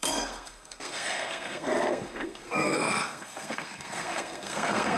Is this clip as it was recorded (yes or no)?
no